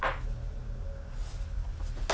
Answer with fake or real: real